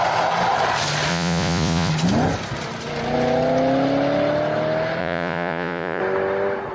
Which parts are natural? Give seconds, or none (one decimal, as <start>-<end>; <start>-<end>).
0.0-1.1; 1.9-5.0; 6.0-6.7